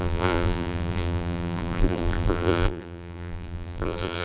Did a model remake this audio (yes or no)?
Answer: yes